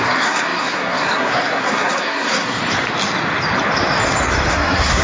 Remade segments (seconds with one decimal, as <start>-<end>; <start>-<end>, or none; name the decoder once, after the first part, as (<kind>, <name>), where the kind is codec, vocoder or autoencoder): 0.0-2.6 (codec, SNAC); 4.5-5.0